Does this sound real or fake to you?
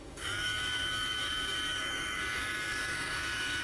fake